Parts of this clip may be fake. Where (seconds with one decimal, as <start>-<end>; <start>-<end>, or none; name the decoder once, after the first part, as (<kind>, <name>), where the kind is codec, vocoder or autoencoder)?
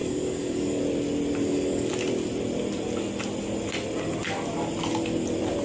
0.0-0.8 (codec, DAC); 1.4-1.9